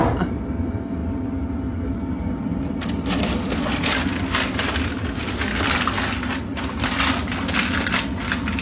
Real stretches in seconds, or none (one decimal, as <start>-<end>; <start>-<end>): 0.0-8.6